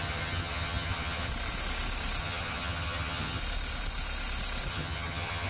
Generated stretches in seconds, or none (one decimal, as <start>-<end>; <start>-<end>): 0.0-1.3; 2.2-3.4; 4.7-5.5